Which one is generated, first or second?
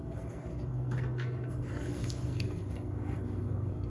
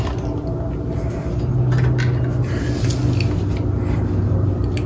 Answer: first